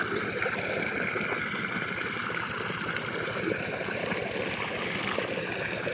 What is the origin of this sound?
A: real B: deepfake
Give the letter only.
A